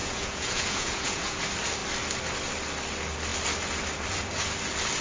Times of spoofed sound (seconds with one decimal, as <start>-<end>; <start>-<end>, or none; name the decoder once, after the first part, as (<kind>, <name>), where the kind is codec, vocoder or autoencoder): 0.0-1.4 (vocoder, Vocos)